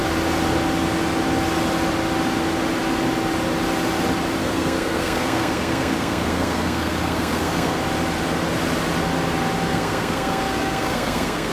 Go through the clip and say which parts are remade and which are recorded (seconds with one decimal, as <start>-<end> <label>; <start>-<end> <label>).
0.0-4.4 recorded; 4.4-7.8 remade; 7.8-9.7 recorded; 9.7-11.5 remade